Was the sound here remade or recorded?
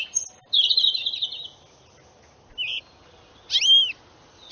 recorded